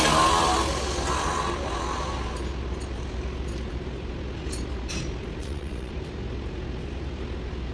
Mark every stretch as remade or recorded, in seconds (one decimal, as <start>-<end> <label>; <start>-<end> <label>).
0.0-5.4 recorded; 5.4-5.9 remade; 5.9-7.7 recorded